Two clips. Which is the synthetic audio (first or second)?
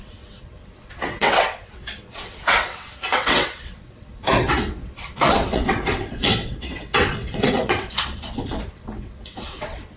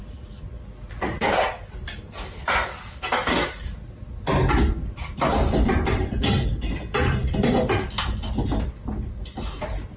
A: first